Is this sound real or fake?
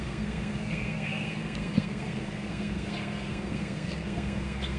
fake